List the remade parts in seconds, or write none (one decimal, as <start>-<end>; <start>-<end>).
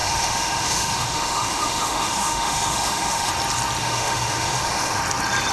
0.0-3.3; 3.8-5.0